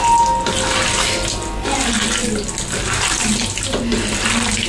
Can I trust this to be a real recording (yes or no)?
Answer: yes